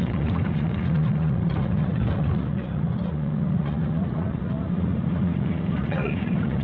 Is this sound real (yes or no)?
no